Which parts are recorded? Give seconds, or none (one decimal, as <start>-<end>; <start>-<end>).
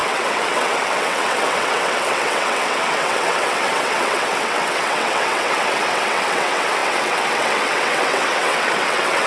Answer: none